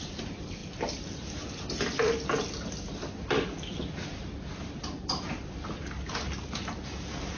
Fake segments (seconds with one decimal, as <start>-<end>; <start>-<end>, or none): none